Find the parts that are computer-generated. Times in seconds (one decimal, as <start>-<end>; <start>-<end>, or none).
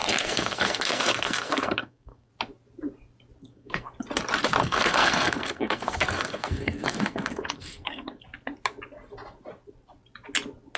0.0-2.3; 3.4-3.9; 4.6-8.2